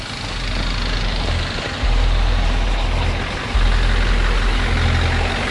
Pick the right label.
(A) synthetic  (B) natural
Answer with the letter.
B